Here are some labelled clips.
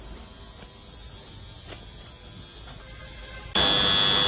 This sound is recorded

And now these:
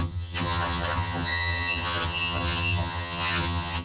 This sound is remade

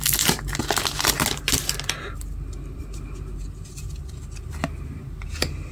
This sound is recorded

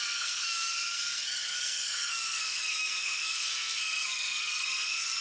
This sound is remade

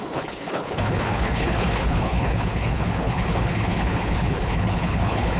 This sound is remade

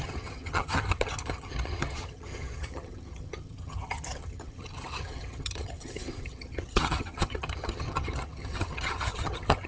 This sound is remade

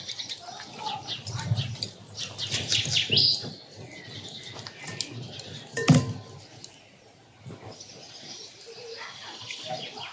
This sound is recorded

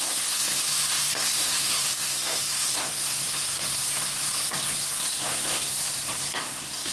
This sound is remade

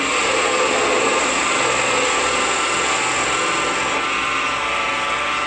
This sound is recorded